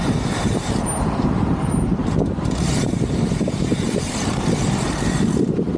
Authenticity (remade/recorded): remade